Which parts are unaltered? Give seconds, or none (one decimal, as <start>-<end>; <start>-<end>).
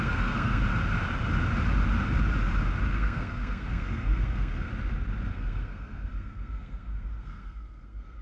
0.6-2.9; 4.7-5.3